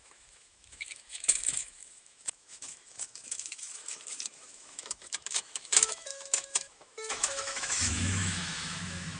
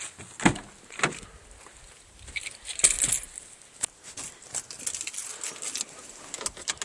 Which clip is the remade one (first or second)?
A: first